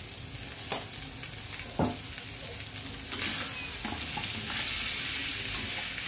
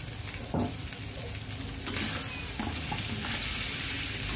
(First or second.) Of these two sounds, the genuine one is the first